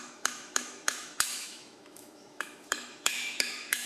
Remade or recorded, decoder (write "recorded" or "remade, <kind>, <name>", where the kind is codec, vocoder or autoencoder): remade, autoencoder, DAC-VAE